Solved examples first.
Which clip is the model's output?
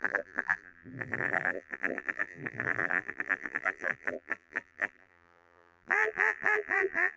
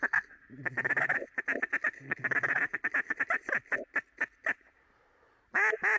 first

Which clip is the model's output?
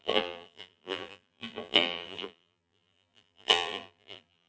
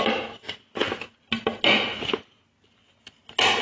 first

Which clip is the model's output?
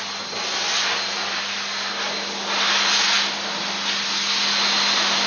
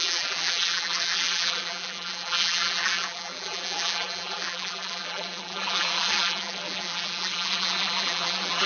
second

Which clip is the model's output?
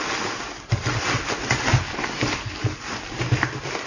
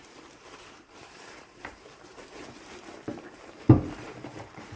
second